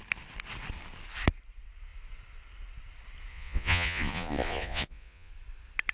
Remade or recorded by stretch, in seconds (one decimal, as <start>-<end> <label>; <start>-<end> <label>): 0.0-3.3 recorded; 3.3-5.3 remade; 5.3-5.9 recorded